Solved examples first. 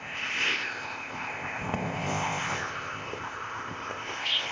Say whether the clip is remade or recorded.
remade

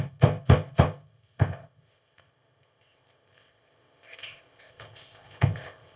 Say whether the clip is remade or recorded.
remade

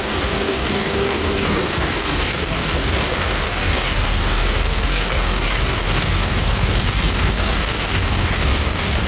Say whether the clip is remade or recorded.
remade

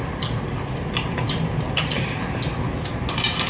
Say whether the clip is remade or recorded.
recorded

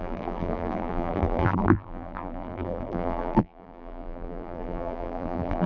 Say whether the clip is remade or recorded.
remade